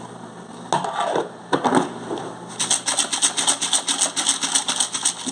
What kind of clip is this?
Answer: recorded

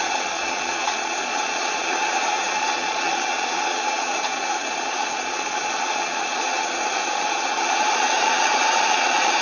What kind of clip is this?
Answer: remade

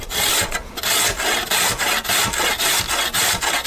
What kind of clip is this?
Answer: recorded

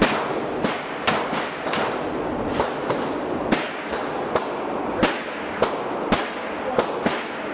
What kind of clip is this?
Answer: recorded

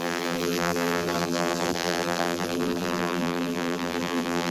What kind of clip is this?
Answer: remade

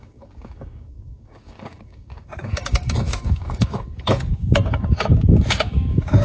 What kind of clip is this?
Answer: remade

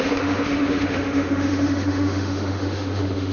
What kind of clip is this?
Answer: remade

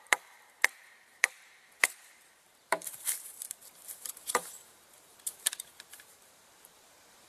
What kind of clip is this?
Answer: remade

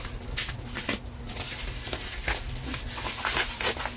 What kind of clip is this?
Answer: recorded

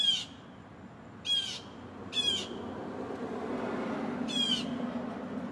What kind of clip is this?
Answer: recorded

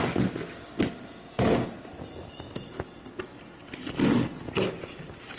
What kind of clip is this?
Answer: recorded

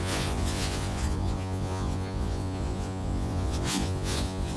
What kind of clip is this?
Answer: remade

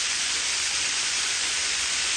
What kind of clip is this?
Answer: remade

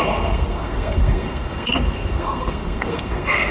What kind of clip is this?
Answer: remade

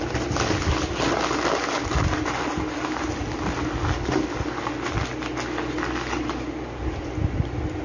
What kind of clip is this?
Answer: recorded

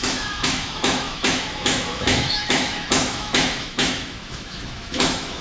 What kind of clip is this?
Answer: remade